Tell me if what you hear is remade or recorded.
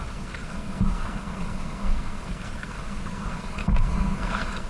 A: remade